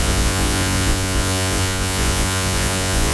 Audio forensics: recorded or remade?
remade